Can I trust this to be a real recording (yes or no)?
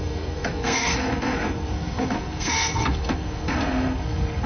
no